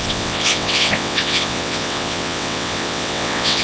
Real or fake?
fake